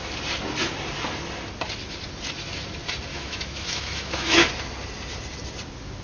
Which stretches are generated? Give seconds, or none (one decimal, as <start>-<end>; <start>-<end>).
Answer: 3.1-4.5